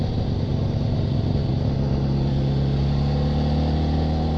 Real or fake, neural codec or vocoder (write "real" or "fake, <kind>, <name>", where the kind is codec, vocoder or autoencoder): real